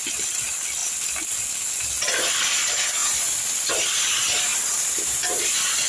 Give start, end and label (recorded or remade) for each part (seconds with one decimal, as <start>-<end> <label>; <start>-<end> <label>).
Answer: 0.0-4.5 recorded; 4.5-5.4 remade; 5.4-5.9 recorded